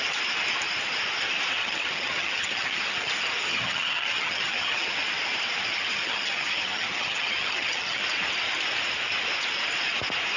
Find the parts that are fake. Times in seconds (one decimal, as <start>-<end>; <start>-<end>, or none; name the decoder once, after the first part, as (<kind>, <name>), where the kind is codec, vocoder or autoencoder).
1.6-3.1 (vocoder, HiFi-GAN); 3.5-4.9; 5.9-8.0